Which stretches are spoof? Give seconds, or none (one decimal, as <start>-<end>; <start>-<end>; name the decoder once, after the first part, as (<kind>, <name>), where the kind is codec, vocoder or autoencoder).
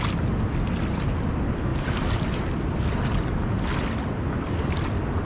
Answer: none